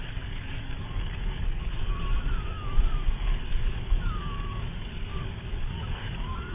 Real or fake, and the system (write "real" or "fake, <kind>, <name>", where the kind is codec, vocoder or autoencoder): fake, codec, DAC